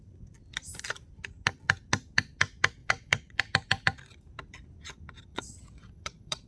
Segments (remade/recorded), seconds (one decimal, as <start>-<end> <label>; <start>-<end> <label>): 0.0-2.8 recorded; 2.8-3.4 remade; 3.4-5.3 recorded; 5.3-6.5 remade